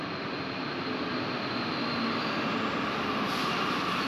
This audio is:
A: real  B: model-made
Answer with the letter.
A